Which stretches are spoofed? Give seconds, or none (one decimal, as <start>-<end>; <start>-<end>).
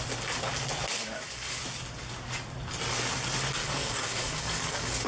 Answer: 0.9-1.6; 3.6-5.1